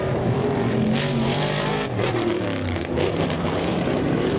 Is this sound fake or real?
fake